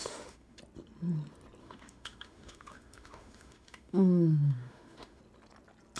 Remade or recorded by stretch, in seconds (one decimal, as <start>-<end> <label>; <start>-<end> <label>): 0.0-0.6 remade; 0.6-1.6 recorded; 1.6-5.2 remade; 5.2-6.0 recorded